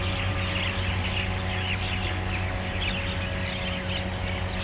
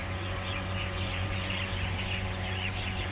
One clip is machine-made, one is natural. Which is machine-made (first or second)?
second